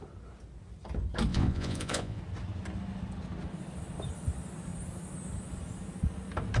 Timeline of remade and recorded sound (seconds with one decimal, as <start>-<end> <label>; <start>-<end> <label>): 0.0-1.3 recorded; 1.3-2.2 remade; 2.2-6.6 recorded